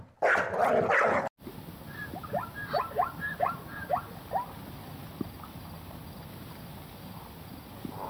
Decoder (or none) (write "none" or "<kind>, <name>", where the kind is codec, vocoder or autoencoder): none